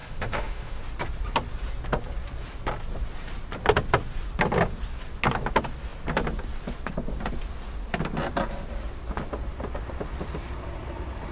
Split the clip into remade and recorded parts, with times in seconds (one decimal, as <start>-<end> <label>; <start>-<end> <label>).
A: 0.0-0.8 remade; 0.8-11.3 recorded